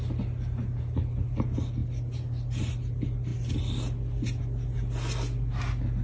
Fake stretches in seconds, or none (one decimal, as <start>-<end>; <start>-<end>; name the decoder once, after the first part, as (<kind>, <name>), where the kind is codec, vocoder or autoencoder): none